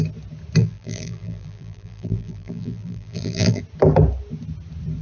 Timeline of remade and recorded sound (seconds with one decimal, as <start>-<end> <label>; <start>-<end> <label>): 0.0-0.6 recorded; 0.6-3.6 remade; 3.6-5.0 recorded